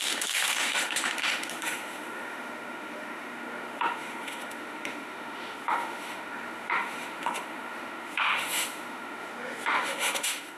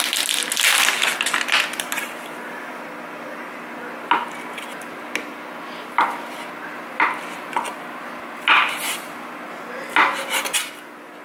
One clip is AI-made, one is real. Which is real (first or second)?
second